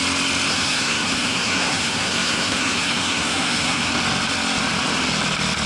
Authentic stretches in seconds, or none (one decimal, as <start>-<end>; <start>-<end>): 0.0-0.5; 3.9-5.7